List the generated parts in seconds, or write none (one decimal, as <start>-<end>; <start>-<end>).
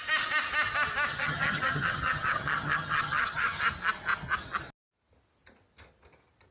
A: 1.1-3.6